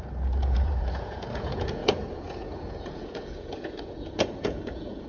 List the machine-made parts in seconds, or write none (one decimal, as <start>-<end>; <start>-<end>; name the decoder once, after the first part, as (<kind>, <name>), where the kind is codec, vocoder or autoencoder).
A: 0.0-5.1 (vocoder, Vocos)